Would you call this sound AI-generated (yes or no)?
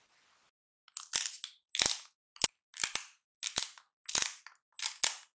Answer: no